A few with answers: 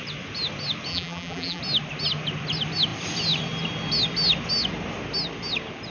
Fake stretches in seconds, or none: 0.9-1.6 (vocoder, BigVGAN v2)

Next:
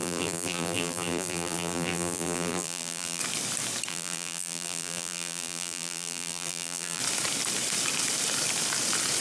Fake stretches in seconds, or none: 0.0-3.2 (vocoder, BigVGAN v2); 3.9-7.0

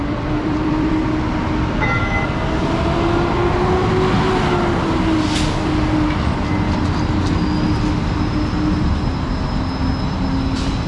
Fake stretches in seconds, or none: 0.0-1.0 (vocoder, BigVGAN v2)